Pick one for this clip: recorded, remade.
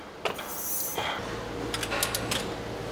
recorded